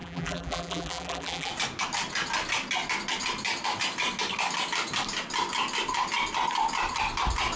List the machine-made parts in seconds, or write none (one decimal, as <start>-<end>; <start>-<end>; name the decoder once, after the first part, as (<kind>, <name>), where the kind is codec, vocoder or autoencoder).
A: 0.0-1.5 (vocoder, BigVGAN v2)